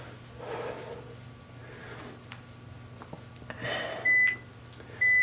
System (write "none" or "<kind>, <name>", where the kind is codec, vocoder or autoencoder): none